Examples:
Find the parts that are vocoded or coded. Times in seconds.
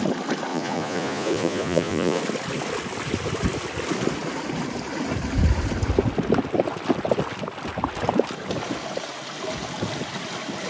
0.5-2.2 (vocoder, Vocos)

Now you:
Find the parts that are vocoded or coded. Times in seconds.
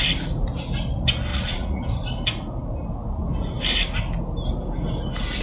1.3-1.8 (vocoder, Vocos)